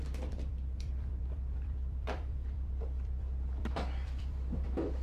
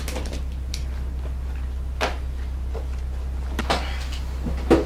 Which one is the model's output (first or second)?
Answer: first